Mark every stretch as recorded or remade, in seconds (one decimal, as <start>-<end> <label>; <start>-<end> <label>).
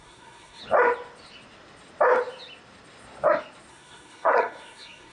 0.0-0.6 remade; 0.6-3.7 recorded; 3.7-5.1 remade